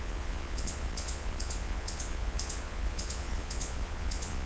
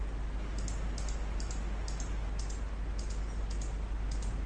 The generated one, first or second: first